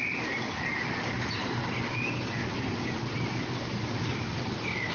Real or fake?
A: real